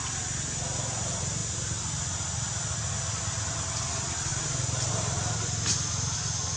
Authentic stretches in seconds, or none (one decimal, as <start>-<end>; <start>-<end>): 0.0-4.3; 4.9-6.6